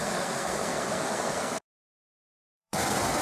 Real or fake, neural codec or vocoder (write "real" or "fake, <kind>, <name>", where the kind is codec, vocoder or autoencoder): fake, codec, SNAC